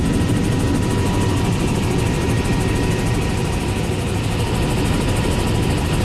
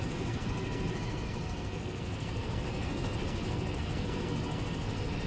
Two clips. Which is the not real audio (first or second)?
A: second